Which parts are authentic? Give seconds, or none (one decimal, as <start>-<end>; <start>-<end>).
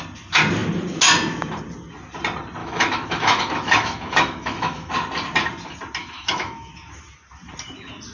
0.0-2.6; 4.9-6.0; 6.7-8.1